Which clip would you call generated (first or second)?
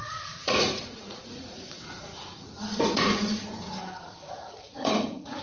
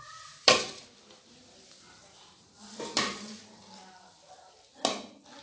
first